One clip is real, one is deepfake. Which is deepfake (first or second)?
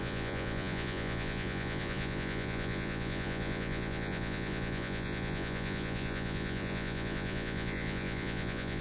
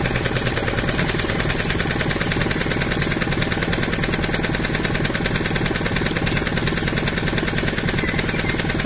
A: first